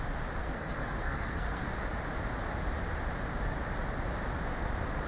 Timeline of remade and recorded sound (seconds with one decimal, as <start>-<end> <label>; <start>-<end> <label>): 0.0-0.4 recorded; 0.4-1.7 remade; 1.7-5.1 recorded